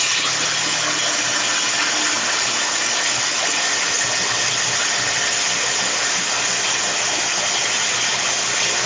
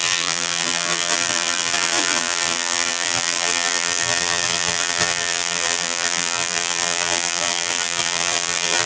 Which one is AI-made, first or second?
second